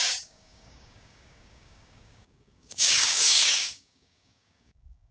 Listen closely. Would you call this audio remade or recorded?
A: remade